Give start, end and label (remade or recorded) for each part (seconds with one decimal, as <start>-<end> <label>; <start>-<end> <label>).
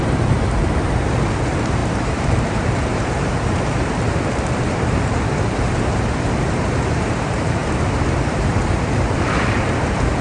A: 0.0-10.2 remade